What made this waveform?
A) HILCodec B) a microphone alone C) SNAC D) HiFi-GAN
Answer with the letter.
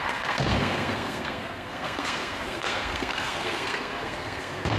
C